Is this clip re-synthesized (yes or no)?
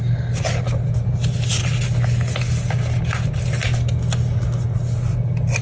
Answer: no